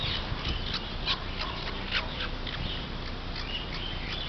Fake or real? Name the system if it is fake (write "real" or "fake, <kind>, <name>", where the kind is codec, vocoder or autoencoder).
real